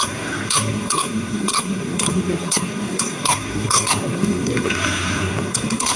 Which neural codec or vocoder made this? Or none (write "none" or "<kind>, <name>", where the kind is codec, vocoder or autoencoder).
codec, SNAC